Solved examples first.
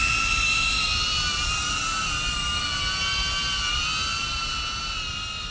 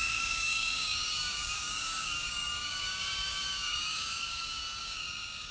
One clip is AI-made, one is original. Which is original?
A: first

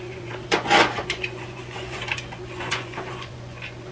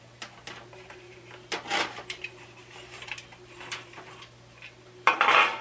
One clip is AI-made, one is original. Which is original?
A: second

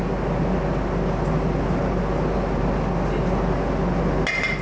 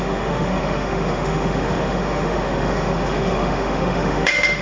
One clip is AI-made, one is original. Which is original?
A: first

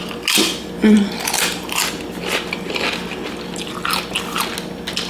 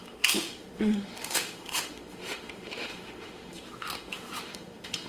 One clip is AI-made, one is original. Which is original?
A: first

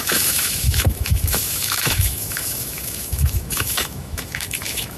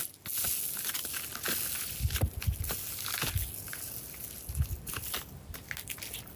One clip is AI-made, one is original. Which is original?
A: second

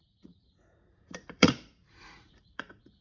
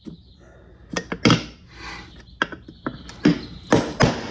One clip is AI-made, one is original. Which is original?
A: second